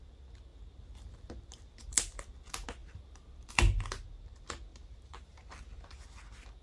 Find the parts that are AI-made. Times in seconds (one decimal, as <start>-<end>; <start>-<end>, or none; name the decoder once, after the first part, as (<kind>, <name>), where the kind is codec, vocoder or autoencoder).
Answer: 2.8-3.5 (vocoder, BigVGAN v2); 4.7-5.5